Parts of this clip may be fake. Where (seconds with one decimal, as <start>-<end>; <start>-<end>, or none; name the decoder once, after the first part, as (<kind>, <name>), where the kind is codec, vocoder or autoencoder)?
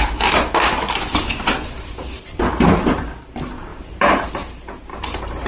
3.7-4.3 (vocoder, BigVGAN v2); 4.9-5.5